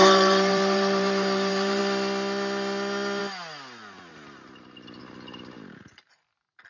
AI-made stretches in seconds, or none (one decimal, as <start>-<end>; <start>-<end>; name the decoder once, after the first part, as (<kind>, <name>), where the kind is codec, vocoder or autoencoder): 0.0-1.8 (vocoder, BigVGAN v2)